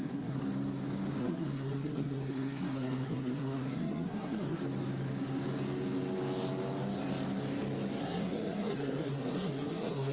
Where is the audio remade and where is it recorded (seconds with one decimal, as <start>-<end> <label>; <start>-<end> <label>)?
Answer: 0.0-0.4 remade; 0.4-1.2 recorded; 1.2-4.6 remade; 4.6-8.0 recorded; 8.0-10.1 remade

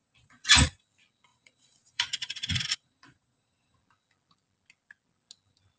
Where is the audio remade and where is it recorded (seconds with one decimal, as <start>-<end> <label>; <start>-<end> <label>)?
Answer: 0.0-0.6 remade; 0.6-1.3 recorded; 1.3-3.8 remade; 3.8-5.8 recorded

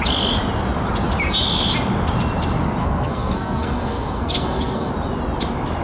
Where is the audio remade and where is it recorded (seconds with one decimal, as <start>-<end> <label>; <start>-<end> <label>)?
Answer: 0.0-2.8 recorded; 2.8-4.9 remade; 4.9-5.8 recorded

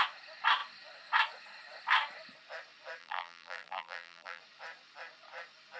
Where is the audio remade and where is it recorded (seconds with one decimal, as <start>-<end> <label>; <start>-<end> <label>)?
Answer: 0.0-3.0 recorded; 3.0-4.4 remade; 4.4-5.8 recorded

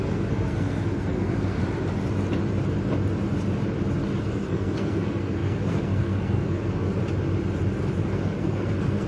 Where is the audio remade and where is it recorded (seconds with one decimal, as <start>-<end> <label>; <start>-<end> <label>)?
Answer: 0.0-1.6 remade; 1.6-4.2 recorded; 4.2-7.0 remade; 7.0-8.1 recorded; 8.1-9.1 remade

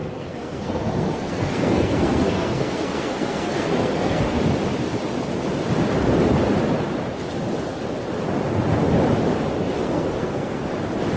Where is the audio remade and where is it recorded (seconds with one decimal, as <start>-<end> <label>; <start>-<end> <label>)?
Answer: 0.0-4.4 remade; 4.4-9.8 recorded; 9.8-10.7 remade; 10.7-11.2 recorded